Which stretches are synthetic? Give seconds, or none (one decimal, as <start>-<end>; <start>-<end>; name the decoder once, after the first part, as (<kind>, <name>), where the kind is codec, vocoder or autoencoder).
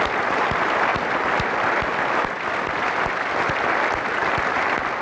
0.9-2.9 (vocoder, BigVGAN v2); 4.1-4.6